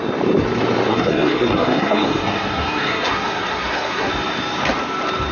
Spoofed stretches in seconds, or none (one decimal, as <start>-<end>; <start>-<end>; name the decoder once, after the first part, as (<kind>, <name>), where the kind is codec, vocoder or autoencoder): 0.9-4.1 (codec, SNAC)